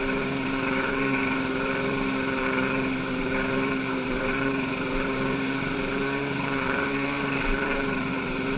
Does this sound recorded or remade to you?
remade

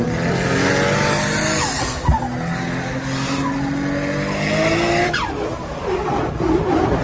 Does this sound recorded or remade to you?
recorded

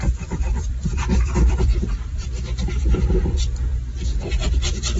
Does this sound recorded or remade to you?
remade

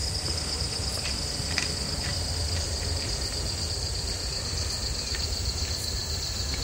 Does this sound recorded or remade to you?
remade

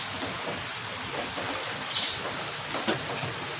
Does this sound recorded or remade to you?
recorded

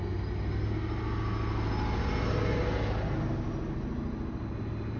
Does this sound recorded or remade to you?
recorded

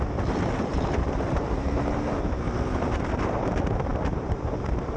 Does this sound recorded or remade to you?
remade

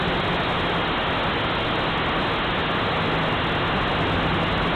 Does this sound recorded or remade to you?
recorded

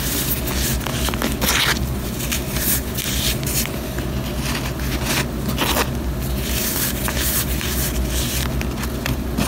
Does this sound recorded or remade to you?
recorded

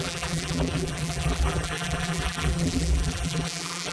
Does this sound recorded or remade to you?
remade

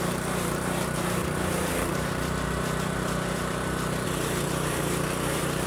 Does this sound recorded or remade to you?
remade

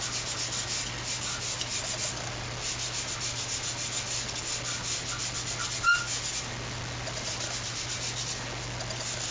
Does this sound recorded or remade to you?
remade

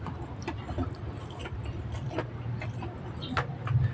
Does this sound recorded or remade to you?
recorded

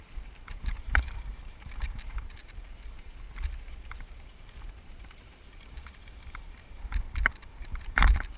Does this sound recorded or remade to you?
remade